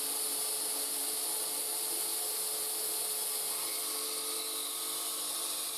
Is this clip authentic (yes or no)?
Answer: yes